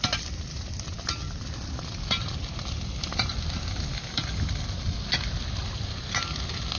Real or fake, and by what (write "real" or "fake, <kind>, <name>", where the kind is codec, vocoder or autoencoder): real